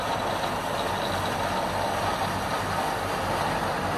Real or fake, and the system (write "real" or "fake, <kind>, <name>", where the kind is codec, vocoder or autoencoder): real